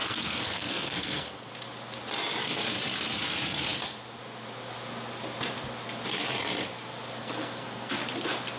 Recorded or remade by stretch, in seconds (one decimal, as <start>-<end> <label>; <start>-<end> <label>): 0.0-1.5 remade; 1.5-7.2 recorded; 7.2-7.9 remade; 7.9-8.6 recorded